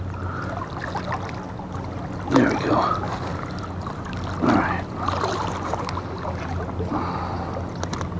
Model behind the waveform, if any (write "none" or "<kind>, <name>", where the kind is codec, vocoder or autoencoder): none